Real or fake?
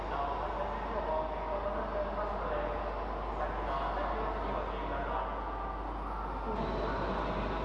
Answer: real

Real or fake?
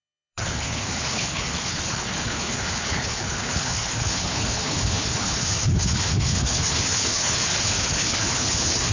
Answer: fake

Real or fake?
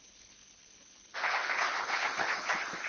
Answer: fake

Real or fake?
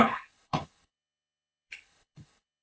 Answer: fake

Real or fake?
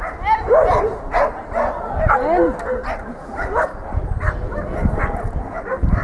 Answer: real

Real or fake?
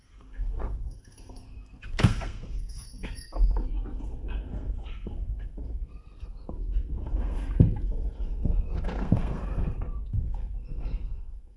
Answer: fake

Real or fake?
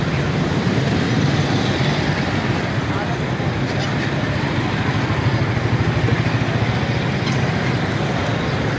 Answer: real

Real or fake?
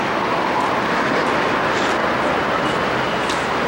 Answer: real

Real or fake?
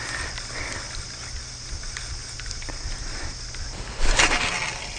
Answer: real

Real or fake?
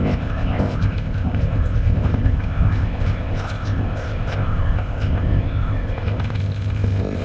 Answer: fake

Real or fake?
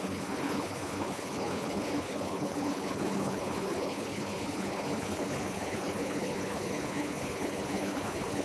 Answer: fake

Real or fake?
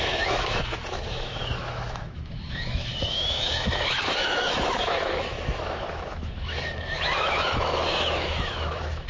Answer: fake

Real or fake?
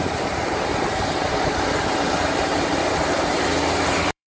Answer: fake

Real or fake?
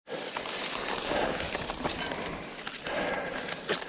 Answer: fake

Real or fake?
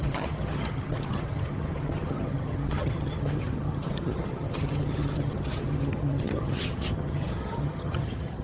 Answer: fake